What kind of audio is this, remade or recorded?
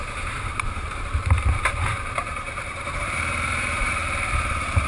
remade